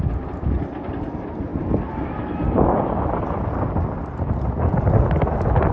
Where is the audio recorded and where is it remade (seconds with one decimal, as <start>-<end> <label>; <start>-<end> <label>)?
0.0-5.7 recorded